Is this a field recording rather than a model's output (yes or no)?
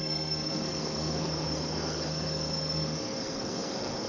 no